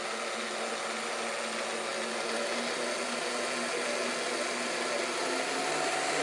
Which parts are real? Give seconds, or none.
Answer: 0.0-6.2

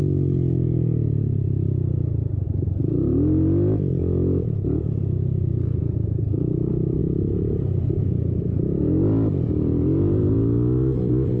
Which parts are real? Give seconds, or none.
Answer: 0.0-11.4

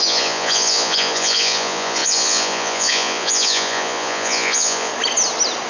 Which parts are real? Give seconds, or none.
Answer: 4.9-5.7